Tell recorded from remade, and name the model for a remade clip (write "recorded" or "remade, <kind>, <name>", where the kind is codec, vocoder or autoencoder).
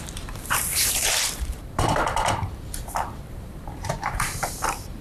remade, vocoder, BigVGAN v2